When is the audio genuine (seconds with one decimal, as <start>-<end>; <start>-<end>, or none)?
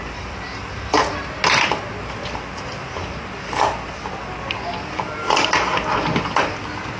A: 0.0-7.0